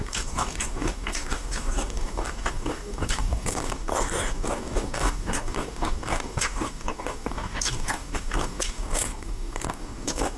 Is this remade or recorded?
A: remade